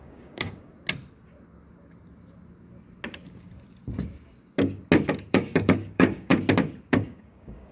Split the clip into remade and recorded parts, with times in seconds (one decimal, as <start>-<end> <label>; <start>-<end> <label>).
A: 0.0-0.7 remade; 0.7-5.3 recorded; 5.3-6.3 remade; 6.3-6.9 recorded; 6.9-7.7 remade